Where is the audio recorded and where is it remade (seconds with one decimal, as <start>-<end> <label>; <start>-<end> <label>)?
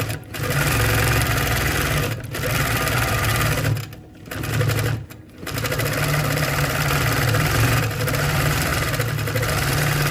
0.0-3.3 remade; 3.3-6.2 recorded; 6.2-8.7 remade; 8.7-9.5 recorded; 9.5-10.1 remade